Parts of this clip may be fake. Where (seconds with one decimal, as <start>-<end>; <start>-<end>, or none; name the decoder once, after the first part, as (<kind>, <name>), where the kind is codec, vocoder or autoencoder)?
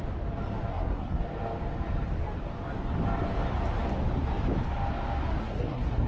0.7-1.2 (codec, SNAC); 5.4-6.1